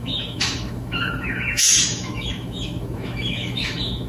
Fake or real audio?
fake